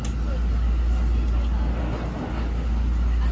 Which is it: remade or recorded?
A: recorded